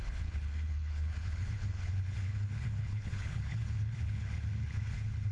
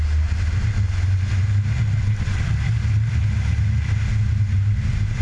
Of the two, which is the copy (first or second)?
first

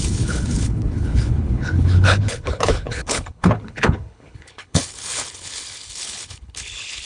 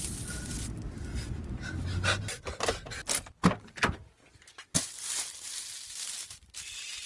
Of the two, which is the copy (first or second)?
first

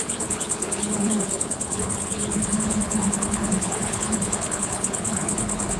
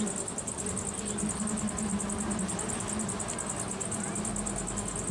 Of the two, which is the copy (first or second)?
first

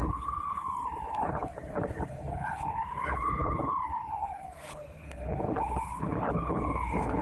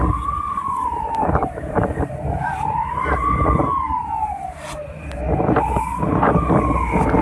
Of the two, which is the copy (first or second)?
first